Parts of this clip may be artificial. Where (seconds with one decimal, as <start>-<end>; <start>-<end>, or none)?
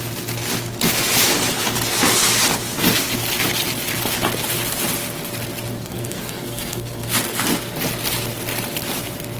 5.8-7.1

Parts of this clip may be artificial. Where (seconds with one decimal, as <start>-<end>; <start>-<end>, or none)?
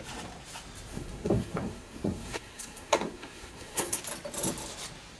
0.9-4.0